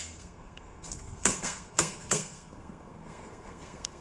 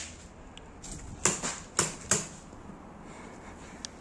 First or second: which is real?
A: second